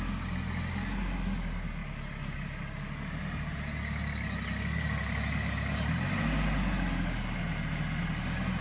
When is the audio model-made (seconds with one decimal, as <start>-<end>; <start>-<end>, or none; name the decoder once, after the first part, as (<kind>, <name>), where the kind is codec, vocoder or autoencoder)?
none